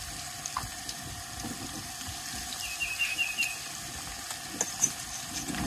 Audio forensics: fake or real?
real